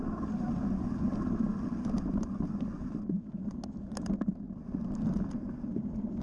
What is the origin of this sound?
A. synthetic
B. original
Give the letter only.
B